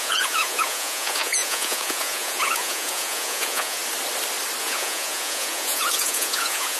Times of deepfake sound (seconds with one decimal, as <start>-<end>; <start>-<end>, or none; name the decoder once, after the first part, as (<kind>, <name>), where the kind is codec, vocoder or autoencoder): 0.0-3.8 (vocoder, Vocos); 4.6-6.8